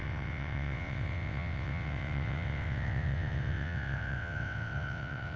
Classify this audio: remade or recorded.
remade